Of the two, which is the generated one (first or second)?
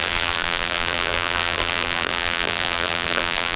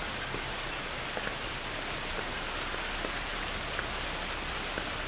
first